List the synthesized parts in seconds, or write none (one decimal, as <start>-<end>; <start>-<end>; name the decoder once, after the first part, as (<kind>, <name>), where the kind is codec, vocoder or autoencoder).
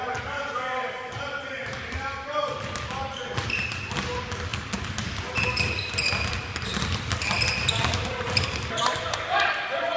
none